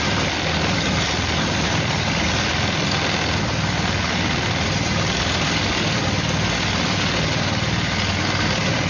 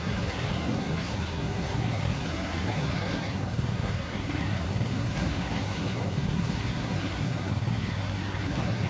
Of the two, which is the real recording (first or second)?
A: first